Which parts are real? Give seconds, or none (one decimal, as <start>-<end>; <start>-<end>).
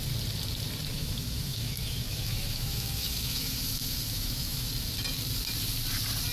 0.0-0.9; 4.7-6.3